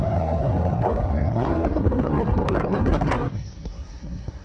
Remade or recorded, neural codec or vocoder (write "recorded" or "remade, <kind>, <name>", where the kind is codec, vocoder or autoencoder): remade, codec, SNAC